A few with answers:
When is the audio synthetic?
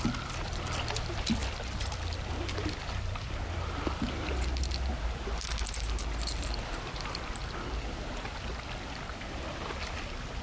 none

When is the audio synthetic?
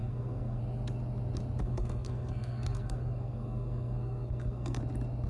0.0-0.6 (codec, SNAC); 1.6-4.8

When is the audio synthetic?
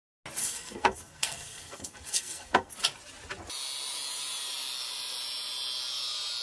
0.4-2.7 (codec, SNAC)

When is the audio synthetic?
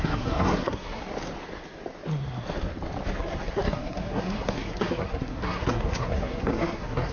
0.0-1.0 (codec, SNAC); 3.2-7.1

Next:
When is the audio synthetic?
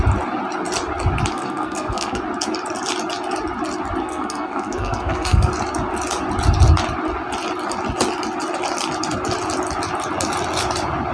1.3-2.2 (codec, SNAC); 4.0-5.5